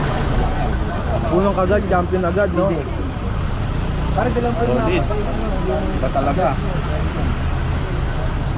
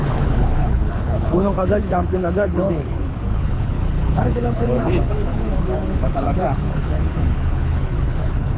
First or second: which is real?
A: first